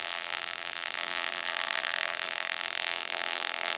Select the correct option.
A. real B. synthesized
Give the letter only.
B